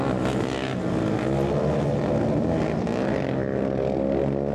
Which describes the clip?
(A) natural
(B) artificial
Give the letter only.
A